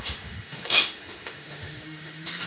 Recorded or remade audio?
remade